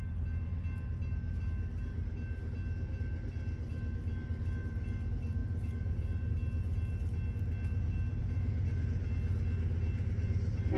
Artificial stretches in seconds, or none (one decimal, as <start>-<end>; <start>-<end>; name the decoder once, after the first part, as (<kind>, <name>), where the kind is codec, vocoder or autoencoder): 5.4-6.3 (vocoder, Vocos); 8.2-9.0